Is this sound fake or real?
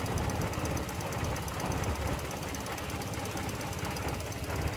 real